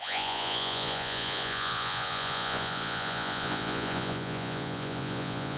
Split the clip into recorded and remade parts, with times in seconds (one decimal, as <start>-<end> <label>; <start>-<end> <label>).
0.0-5.6 remade